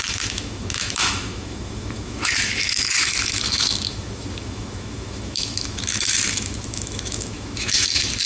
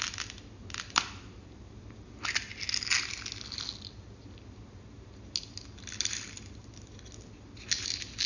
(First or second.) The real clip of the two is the second